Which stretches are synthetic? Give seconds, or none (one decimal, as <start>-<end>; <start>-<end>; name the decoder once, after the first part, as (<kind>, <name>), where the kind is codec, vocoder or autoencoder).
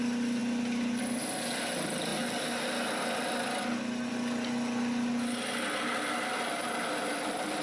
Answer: none